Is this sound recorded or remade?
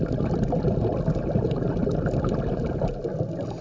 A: recorded